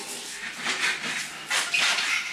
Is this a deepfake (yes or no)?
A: no